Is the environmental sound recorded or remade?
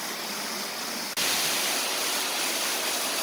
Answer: recorded